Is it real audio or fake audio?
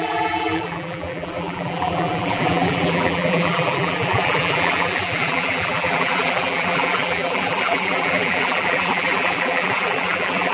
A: fake